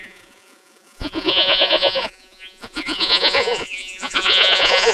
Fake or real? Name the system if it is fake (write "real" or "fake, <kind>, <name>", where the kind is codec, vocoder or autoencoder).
fake, vocoder, Vocos